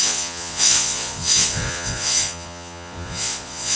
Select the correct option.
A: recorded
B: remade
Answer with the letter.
B